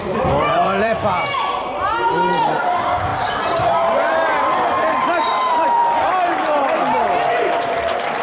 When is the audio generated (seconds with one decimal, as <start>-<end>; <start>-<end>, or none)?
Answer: 0.0-3.1; 3.6-5.8; 7.3-8.2